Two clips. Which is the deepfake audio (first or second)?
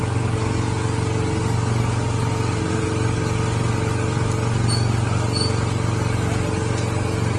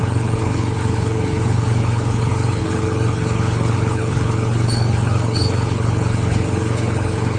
second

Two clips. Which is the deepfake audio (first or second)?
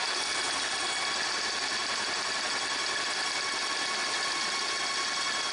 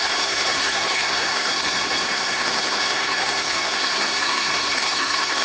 second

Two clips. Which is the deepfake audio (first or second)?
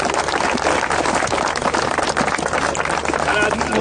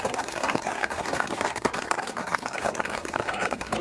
second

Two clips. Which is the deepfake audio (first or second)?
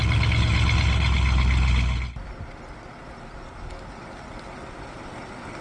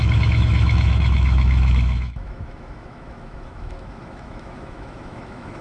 second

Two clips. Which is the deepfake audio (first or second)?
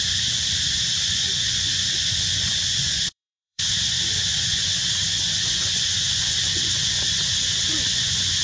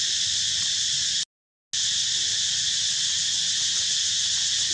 first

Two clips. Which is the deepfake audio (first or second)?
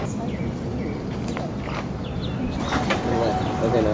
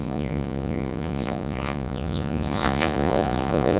second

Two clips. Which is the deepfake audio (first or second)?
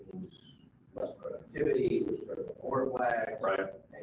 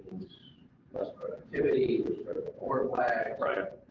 second